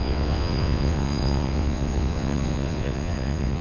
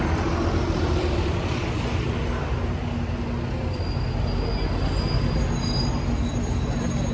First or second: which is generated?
first